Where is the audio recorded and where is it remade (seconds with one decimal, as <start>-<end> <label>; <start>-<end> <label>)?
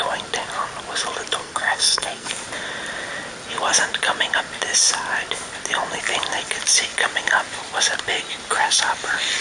0.0-1.4 recorded; 1.4-2.3 remade; 2.3-9.4 recorded